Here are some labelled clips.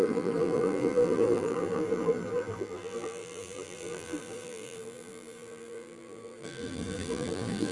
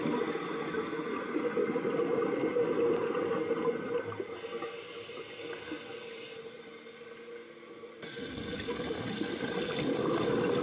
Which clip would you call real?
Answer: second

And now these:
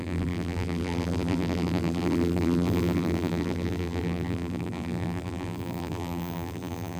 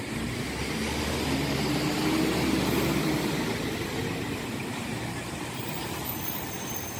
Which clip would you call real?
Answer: second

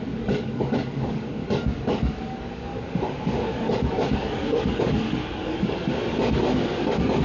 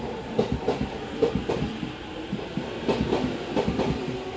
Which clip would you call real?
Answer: second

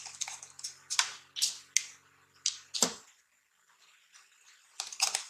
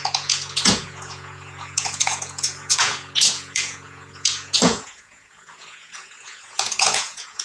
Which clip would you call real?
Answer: first